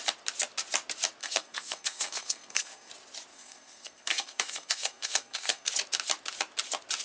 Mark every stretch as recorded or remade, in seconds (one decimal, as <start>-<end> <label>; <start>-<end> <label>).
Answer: 0.0-1.2 recorded; 1.2-2.9 remade; 2.9-3.3 recorded; 3.3-5.7 remade; 5.7-7.0 recorded